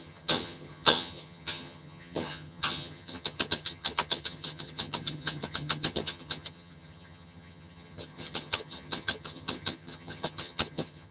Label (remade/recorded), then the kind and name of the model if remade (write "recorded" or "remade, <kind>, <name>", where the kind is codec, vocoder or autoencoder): remade, vocoder, HiFi-GAN